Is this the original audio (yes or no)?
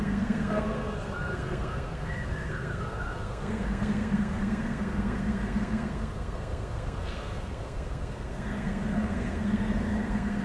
no